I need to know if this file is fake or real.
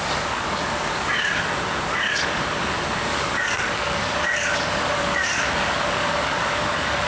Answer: fake